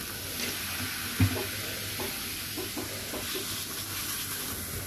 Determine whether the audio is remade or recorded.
recorded